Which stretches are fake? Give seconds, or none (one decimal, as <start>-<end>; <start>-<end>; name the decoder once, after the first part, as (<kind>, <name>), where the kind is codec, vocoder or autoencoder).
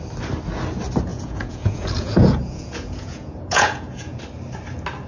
1.1-4.2 (vocoder, Vocos)